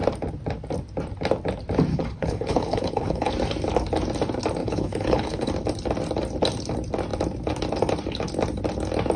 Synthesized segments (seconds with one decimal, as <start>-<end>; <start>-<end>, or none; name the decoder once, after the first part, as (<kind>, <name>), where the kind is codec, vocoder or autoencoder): 1.9-3.3 (codec, HILCodec); 4.6-5.5